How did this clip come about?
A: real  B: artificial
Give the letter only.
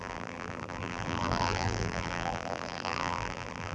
B